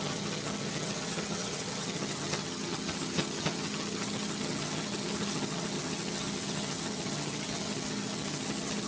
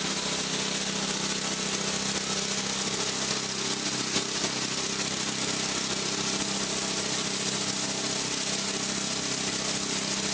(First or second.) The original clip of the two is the second